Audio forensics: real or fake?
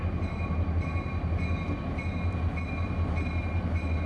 real